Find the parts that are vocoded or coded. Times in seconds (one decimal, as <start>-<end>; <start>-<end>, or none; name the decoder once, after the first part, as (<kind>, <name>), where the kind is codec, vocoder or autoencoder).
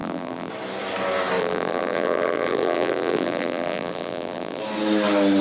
0.0-0.5 (vocoder, BigVGAN v2); 1.4-4.6